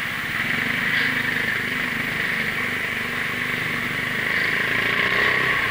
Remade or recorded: recorded